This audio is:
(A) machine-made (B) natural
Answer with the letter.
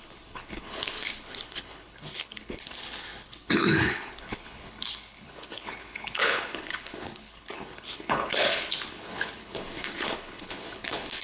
A